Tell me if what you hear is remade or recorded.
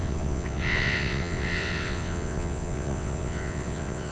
remade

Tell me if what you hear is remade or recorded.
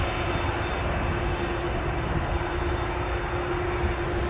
recorded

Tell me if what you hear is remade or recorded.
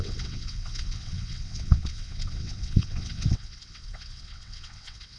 remade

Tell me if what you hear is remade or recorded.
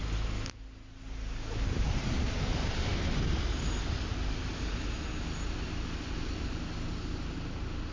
recorded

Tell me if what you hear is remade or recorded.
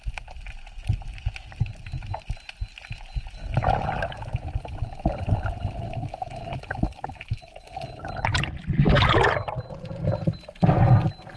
recorded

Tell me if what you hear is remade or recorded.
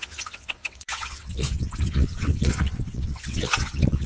remade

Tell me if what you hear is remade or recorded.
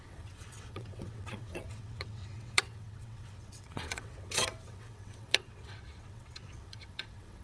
remade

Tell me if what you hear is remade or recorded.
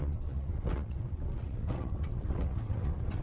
remade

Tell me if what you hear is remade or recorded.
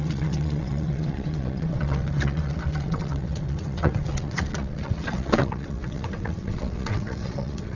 remade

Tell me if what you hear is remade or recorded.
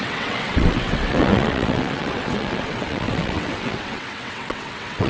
remade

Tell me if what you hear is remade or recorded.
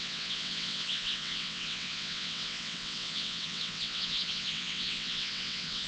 remade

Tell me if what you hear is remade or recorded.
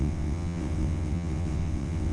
remade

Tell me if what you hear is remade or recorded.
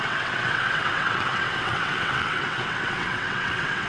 remade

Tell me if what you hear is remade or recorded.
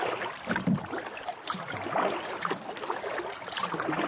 recorded